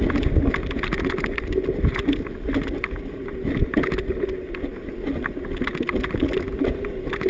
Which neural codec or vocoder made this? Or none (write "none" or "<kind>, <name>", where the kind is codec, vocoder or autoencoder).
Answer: none